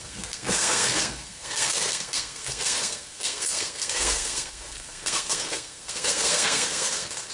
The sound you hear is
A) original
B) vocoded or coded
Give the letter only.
B